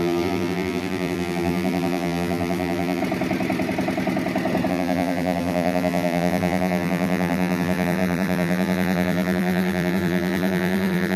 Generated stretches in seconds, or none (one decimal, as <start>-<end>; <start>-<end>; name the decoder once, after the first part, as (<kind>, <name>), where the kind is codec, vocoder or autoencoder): 0.0-3.0 (vocoder, BigVGAN v2); 4.7-11.2